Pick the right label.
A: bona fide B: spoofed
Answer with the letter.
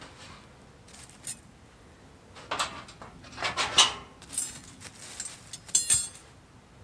A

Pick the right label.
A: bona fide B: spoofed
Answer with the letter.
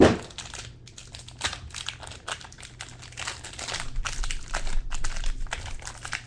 A